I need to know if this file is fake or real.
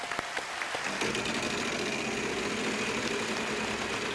real